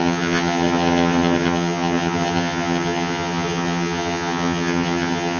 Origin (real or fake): fake